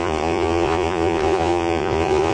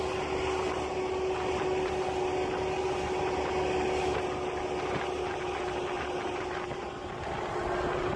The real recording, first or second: second